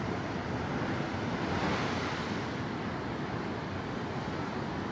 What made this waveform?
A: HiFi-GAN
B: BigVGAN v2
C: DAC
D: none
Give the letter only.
D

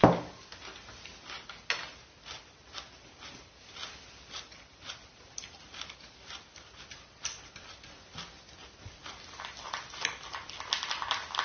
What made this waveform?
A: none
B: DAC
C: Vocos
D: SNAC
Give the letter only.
A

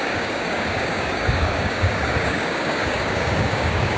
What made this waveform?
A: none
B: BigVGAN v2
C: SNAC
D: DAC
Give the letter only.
D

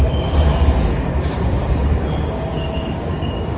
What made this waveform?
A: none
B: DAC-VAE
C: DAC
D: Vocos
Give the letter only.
C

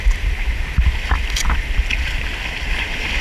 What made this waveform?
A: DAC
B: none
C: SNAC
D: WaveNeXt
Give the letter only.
B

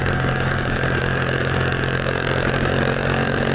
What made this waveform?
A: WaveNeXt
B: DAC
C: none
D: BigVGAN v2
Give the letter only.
B